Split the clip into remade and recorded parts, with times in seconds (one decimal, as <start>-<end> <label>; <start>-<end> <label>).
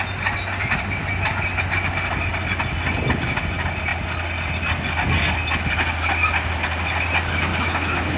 0.0-7.5 recorded; 7.5-8.2 remade